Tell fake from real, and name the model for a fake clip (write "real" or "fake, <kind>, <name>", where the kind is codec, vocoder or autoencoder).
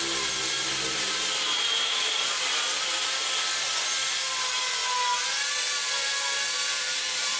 real